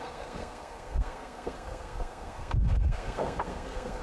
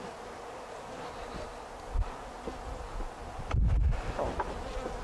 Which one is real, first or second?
second